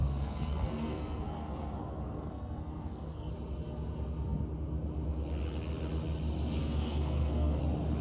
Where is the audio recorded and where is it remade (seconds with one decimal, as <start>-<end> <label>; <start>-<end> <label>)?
0.0-3.3 remade; 3.3-6.6 recorded; 6.6-7.6 remade; 7.6-8.0 recorded